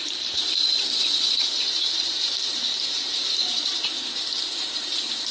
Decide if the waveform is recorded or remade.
remade